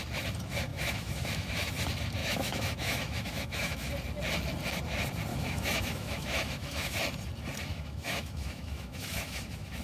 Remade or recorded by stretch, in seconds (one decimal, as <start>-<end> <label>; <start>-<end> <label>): 0.0-0.7 recorded; 0.7-1.7 remade; 1.7-2.2 recorded; 2.2-3.9 remade; 3.9-5.3 recorded; 5.3-7.0 remade; 7.0-7.7 recorded; 7.7-9.8 remade